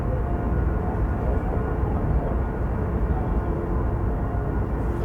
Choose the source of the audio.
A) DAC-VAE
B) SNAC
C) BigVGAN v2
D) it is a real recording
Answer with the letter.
D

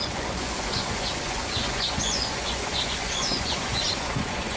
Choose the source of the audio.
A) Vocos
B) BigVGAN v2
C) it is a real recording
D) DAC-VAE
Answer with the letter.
A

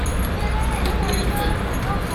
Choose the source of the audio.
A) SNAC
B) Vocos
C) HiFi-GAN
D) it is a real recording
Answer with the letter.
D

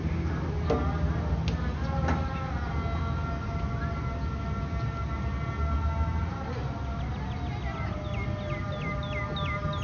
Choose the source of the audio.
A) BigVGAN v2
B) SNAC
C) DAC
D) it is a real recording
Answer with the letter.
D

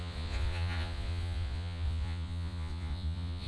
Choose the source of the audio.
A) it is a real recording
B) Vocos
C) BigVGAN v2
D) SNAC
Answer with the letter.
B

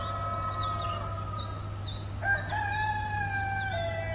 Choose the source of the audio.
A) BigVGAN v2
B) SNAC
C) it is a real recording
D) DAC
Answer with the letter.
C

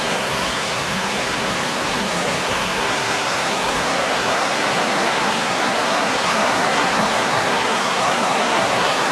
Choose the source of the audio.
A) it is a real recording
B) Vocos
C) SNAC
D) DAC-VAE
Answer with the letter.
C